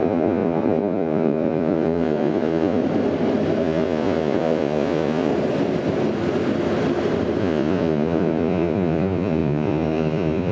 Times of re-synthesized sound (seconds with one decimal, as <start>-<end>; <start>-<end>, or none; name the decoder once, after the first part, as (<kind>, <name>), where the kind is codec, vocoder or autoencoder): 0.0-2.8 (vocoder, Vocos); 3.6-5.3; 7.4-10.5